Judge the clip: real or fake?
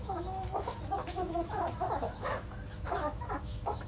fake